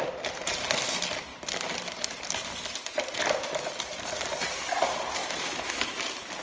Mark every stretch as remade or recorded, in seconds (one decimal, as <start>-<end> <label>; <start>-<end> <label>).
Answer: 0.0-5.2 recorded; 5.2-5.9 remade; 5.9-6.4 recorded